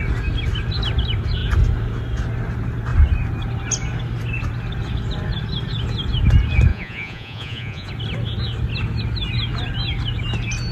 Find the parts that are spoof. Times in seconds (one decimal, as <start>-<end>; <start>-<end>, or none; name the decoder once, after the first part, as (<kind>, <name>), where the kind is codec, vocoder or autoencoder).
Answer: 6.7-7.9 (vocoder, Vocos)